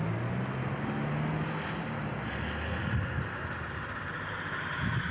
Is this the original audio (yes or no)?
yes